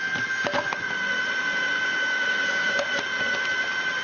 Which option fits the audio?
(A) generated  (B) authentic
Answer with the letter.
B